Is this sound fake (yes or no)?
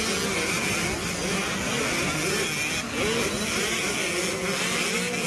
no